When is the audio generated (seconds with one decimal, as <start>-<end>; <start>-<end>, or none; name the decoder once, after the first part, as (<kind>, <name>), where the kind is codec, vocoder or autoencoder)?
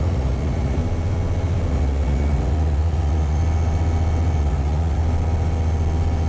0.0-0.8 (vocoder, Vocos); 1.7-3.4; 4.4-5.0